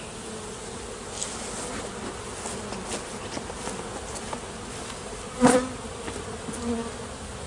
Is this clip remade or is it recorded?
recorded